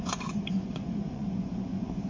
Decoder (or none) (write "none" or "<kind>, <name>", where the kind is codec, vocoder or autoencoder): vocoder, Vocos